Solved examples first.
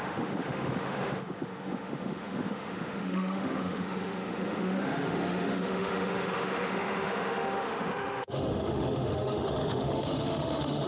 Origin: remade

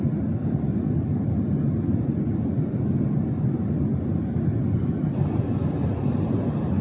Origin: recorded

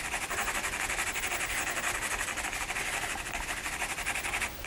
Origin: remade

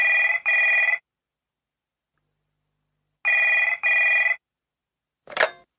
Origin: recorded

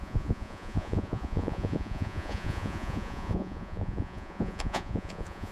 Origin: remade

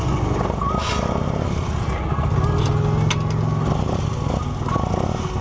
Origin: recorded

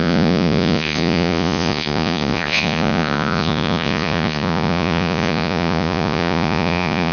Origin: remade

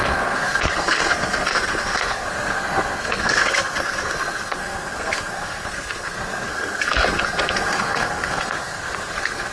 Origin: remade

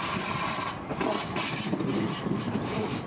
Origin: recorded